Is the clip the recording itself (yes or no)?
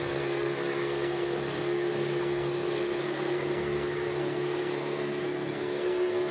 no